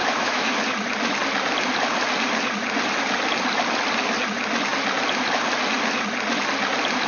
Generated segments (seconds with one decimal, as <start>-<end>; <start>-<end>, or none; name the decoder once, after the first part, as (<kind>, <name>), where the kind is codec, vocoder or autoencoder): 0.0-0.6 (autoencoder, DAC-VAE)